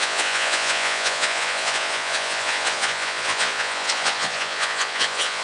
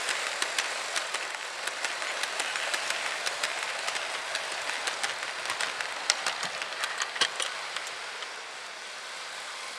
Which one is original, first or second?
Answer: second